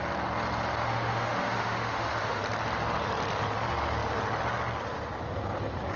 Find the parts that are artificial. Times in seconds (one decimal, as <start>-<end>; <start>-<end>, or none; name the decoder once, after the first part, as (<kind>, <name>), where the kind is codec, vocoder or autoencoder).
0.8-2.4 (autoencoder, DAC-VAE)